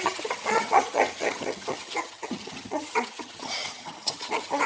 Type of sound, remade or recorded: remade